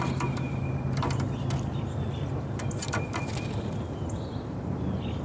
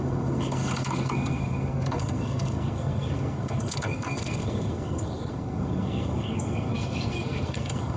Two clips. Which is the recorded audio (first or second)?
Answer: first